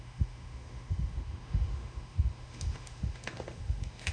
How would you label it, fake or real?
fake